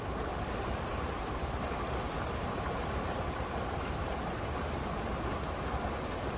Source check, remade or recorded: recorded